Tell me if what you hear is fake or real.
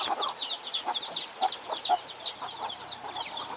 real